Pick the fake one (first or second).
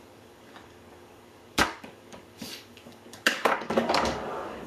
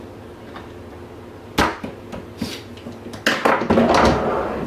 first